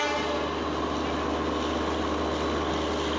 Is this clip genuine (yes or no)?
yes